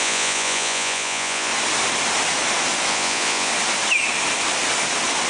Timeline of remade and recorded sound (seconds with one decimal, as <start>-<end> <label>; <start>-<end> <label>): 0.0-1.5 remade; 1.5-2.9 recorded; 2.9-3.5 remade; 3.5-5.3 recorded